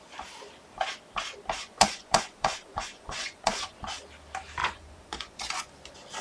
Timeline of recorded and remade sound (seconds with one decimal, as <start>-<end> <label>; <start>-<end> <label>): 0.0-1.6 recorded; 1.6-3.8 remade; 3.8-4.6 recorded; 4.6-5.7 remade; 5.7-6.2 recorded